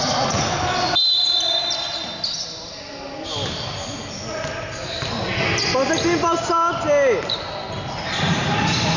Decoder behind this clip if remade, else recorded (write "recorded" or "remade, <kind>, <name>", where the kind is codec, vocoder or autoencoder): recorded